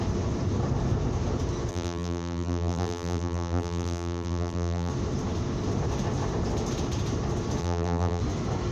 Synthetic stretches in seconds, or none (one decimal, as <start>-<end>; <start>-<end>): 1.7-4.9; 7.6-8.2